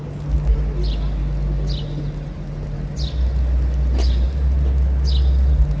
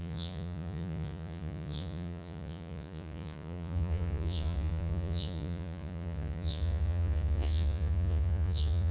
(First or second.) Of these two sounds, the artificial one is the second